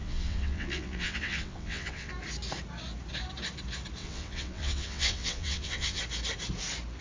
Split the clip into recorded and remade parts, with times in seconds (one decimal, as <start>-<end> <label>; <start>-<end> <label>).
0.0-2.1 remade; 2.1-4.0 recorded; 4.0-6.0 remade; 6.0-7.0 recorded